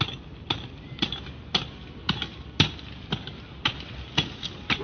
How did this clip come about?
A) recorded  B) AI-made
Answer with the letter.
A